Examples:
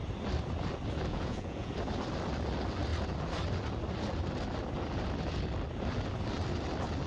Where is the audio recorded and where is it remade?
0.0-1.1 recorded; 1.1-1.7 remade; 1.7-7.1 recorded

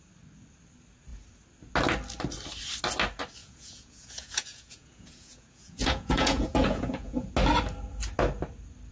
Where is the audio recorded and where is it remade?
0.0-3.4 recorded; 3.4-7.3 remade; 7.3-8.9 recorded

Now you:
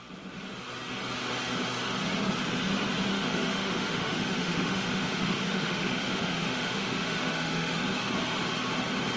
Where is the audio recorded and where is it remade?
0.0-3.1 recorded; 3.1-7.8 remade; 7.8-9.2 recorded

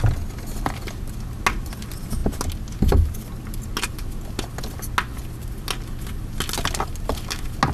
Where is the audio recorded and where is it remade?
0.0-7.7 recorded

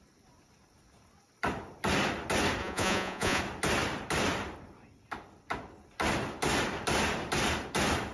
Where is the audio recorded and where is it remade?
0.0-2.6 recorded; 2.6-3.4 remade; 3.4-8.1 recorded